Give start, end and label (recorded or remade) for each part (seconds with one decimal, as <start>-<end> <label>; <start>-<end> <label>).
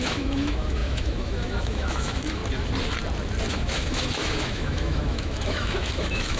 0.0-2.4 remade; 2.4-3.5 recorded; 3.5-6.4 remade